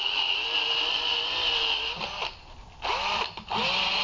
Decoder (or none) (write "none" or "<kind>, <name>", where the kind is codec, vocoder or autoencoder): none